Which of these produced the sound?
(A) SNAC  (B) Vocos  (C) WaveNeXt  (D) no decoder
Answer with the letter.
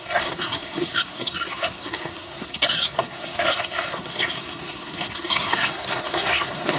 A